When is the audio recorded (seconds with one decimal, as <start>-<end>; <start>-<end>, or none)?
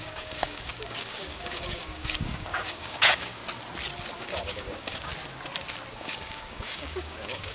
3.4-4.2; 5.1-5.9